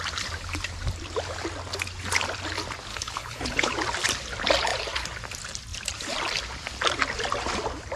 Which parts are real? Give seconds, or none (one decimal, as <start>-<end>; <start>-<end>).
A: 0.0-2.9; 3.7-8.0